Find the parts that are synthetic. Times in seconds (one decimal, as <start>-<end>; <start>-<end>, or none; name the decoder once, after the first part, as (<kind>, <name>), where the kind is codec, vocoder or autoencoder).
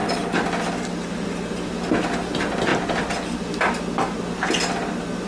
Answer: none